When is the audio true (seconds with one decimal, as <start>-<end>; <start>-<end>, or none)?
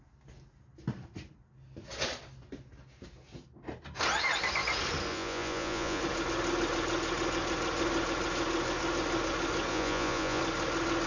0.0-5.1; 6.0-9.7; 10.4-11.1